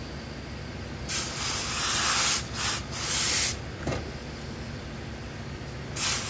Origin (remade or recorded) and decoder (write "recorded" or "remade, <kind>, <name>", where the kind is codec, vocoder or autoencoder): recorded